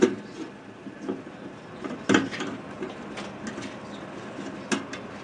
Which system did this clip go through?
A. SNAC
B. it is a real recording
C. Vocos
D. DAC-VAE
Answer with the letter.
B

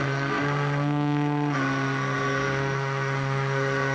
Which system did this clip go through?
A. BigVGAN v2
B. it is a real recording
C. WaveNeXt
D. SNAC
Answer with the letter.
D